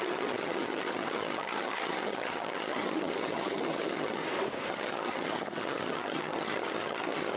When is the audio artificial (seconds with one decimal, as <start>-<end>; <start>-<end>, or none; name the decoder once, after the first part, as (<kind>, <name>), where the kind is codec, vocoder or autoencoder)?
0.0-4.2 (vocoder, HiFi-GAN); 4.7-7.4